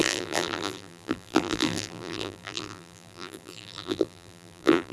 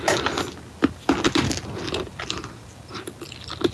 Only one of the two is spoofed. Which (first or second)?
first